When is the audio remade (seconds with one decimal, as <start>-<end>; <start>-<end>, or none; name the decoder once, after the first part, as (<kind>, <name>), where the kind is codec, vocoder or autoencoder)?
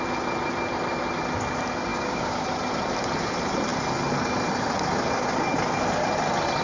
1.9-2.4 (codec, DAC)